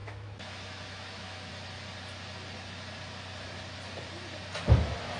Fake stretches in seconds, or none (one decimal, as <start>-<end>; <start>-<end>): 0.0-1.5